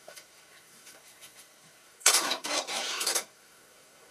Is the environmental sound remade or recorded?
remade